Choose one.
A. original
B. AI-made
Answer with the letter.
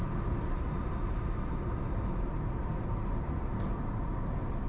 A